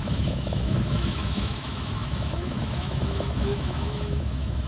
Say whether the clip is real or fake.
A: fake